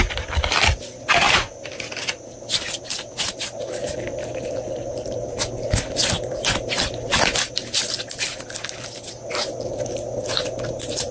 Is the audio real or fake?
real